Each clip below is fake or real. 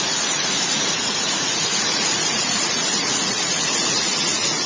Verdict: fake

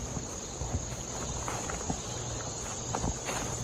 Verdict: real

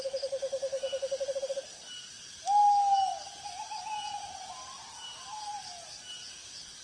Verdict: real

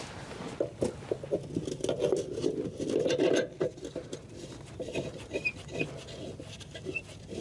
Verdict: real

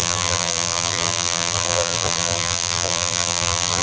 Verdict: fake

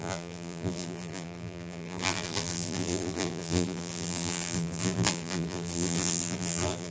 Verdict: fake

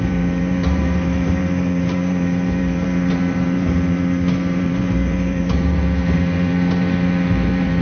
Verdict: fake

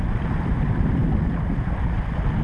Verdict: real